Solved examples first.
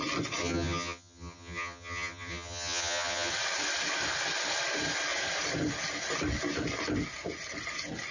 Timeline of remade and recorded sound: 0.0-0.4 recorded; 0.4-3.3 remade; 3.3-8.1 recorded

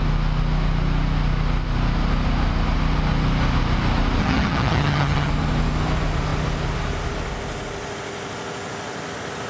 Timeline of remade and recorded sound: 0.0-4.2 recorded; 4.2-5.3 remade; 5.3-9.5 recorded

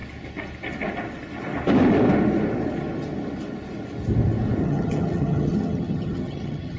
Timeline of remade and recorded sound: 0.0-4.6 recorded; 4.6-6.8 remade

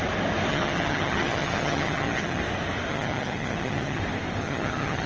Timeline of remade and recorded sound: 0.0-0.5 recorded; 0.5-2.4 remade; 2.4-2.9 recorded; 2.9-4.0 remade; 4.0-4.4 recorded; 4.4-5.1 remade

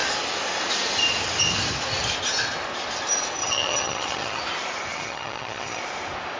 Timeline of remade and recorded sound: 0.0-3.4 recorded; 3.4-4.4 remade; 4.4-4.9 recorded; 4.9-5.8 remade; 5.8-6.4 recorded

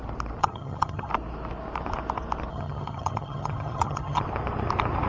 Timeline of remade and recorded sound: 0.0-0.4 recorded; 0.4-1.1 remade; 1.1-2.5 recorded; 2.5-4.2 remade; 4.2-5.1 recorded

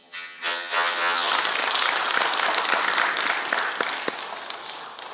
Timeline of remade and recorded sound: 0.0-1.3 remade; 1.3-5.1 recorded